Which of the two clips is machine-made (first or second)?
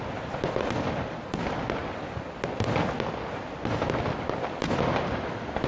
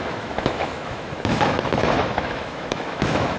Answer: second